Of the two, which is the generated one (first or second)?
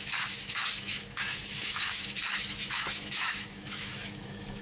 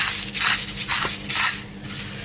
first